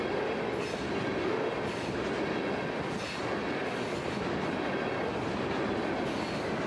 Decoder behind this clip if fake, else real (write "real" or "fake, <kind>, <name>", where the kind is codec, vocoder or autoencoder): real